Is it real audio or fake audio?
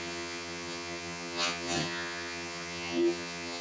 fake